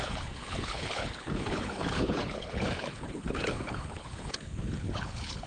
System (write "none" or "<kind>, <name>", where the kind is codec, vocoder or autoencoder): codec, HILCodec